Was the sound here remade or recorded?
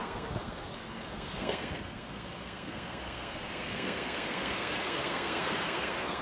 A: remade